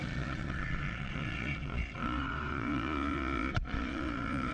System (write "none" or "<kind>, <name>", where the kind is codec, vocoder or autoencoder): vocoder, Vocos